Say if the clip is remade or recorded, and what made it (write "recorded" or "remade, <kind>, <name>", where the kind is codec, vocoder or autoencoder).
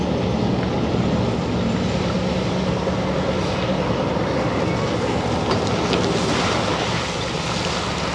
recorded